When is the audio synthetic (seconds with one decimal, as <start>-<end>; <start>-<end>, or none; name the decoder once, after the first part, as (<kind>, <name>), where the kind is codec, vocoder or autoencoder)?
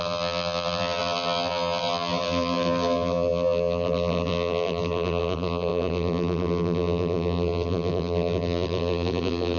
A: 0.0-9.6 (vocoder, BigVGAN v2)